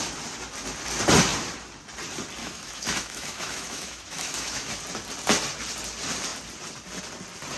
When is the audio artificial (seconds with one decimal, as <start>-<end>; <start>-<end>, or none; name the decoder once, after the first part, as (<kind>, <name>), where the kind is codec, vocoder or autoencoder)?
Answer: 2.4-4.8 (autoencoder, DAC-VAE)